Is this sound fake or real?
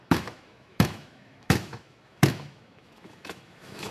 fake